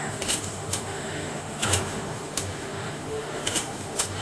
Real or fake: fake